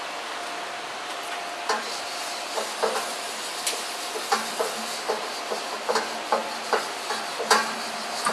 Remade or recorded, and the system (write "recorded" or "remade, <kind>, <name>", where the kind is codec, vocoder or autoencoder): recorded